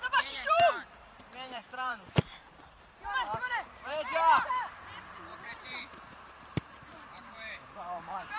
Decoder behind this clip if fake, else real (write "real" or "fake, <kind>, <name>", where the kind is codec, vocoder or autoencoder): fake, vocoder, BigVGAN v2